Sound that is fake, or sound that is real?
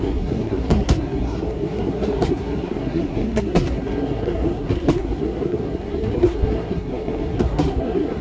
fake